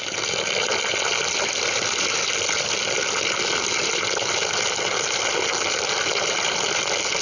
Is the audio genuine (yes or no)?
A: yes